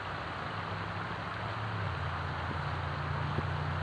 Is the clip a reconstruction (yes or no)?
no